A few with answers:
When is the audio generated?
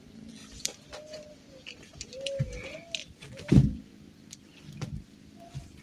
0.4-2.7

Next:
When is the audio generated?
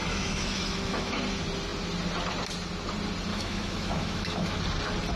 0.0-1.2; 3.3-4.6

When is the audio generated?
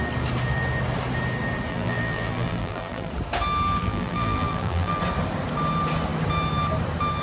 1.7-3.1; 3.8-5.0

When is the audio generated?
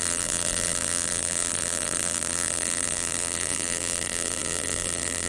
0.0-5.3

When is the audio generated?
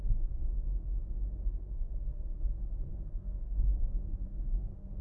0.0-0.4; 1.5-5.0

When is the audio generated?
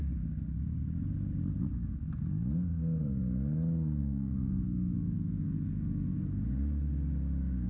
4.0-6.4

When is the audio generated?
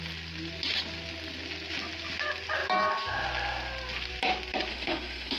4.7-5.4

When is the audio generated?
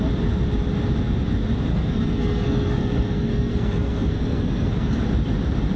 1.7-4.9